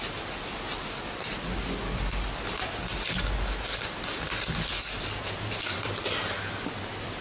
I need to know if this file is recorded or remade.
recorded